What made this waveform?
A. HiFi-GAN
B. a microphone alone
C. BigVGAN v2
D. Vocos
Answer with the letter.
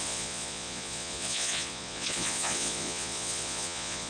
D